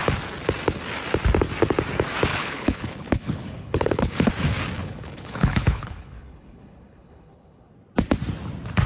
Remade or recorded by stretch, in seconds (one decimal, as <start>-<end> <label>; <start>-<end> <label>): 0.0-2.3 recorded; 2.3-4.3 remade; 4.3-4.8 recorded; 4.8-7.7 remade; 7.7-8.9 recorded